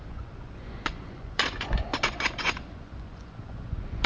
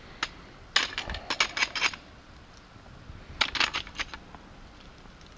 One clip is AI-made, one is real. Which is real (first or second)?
second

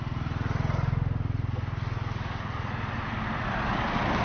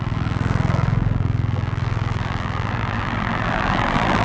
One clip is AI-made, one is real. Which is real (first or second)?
first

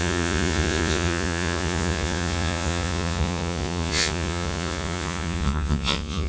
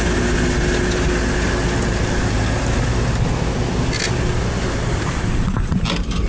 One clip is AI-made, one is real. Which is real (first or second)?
second